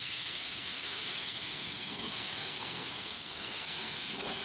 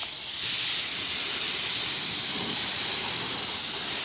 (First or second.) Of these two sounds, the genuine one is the second